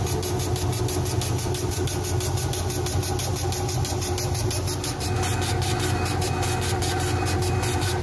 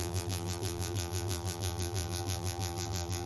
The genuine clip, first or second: first